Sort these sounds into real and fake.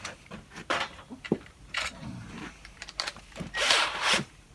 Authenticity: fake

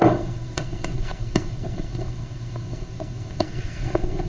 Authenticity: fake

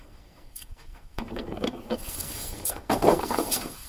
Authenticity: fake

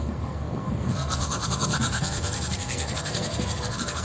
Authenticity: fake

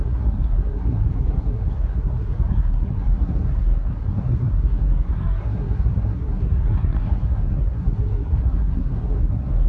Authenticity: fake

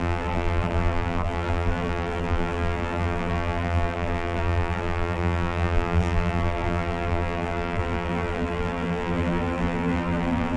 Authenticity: fake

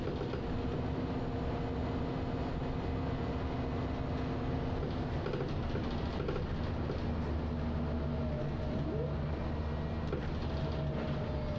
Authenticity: real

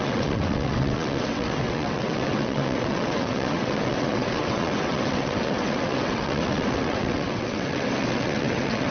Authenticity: fake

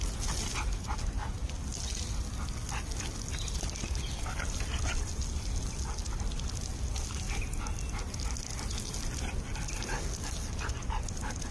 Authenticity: real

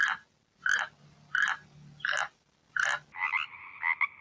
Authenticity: real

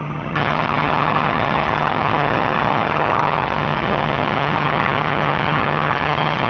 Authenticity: fake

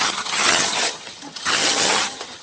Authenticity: fake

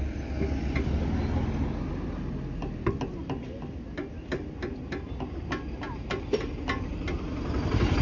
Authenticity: real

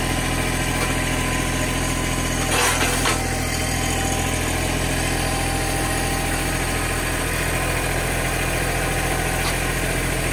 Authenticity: real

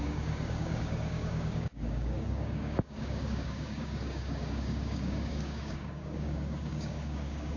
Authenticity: fake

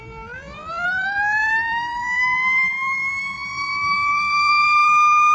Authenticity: fake